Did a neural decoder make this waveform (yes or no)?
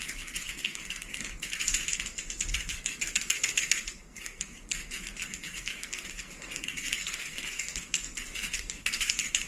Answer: yes